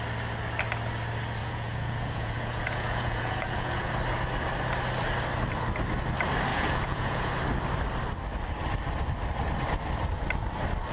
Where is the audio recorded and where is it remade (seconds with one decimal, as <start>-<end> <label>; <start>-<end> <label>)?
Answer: 0.0-1.4 recorded; 1.4-3.9 remade; 3.9-6.5 recorded; 6.5-7.3 remade; 7.3-10.9 recorded